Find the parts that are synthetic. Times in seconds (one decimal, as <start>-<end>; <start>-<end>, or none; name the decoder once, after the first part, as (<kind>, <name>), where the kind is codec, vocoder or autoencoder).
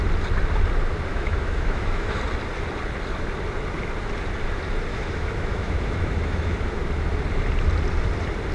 1.1-2.2 (autoencoder, DAC-VAE); 4.9-6.7